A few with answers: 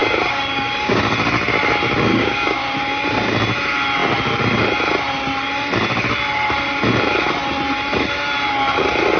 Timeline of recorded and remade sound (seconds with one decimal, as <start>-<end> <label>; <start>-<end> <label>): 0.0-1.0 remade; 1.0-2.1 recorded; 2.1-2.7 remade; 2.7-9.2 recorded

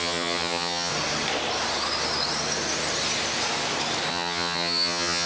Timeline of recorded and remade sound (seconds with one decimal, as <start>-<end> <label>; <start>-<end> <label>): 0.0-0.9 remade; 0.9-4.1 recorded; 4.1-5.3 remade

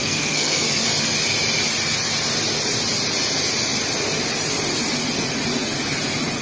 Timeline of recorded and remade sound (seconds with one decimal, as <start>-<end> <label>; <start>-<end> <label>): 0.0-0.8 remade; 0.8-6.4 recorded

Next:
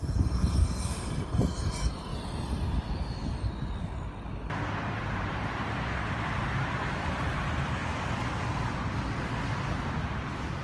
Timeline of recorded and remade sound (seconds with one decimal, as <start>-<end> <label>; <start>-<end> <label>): 0.0-2.1 remade; 2.1-4.8 recorded; 4.8-7.8 remade; 7.8-9.9 recorded; 9.9-10.6 remade

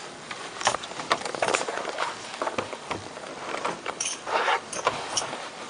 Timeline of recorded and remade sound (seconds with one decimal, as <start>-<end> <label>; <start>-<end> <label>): 0.0-3.3 remade; 3.3-3.8 recorded; 3.8-5.7 remade